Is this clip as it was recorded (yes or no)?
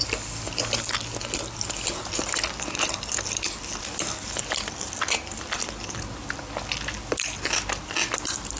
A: yes